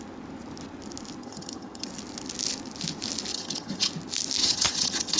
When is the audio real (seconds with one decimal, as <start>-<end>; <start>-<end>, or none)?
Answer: 0.0-1.2; 1.9-3.3; 3.9-4.4